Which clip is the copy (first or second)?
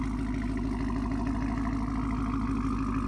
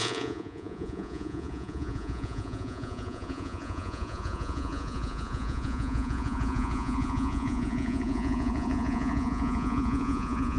second